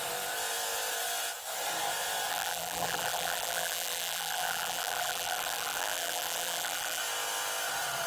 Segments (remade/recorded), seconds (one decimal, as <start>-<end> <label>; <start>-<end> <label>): 0.0-2.3 recorded; 2.3-7.0 remade; 7.0-8.1 recorded